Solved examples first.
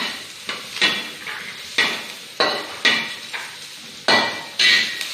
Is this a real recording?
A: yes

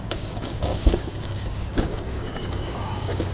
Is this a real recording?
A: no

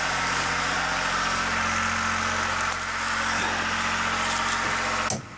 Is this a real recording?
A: yes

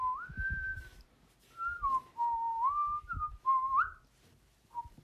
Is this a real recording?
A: yes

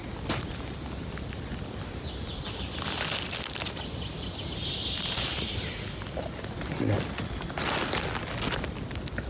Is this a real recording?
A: yes